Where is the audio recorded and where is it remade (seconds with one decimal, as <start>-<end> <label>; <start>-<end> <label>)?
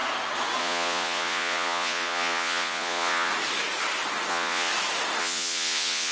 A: 0.0-0.6 recorded; 0.6-3.3 remade; 3.3-4.3 recorded; 4.3-4.7 remade; 4.7-5.2 recorded; 5.2-6.1 remade